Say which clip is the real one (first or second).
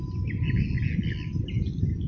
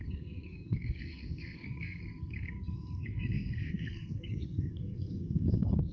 first